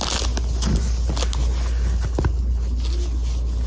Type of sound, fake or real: real